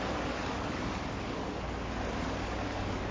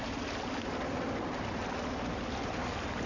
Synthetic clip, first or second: first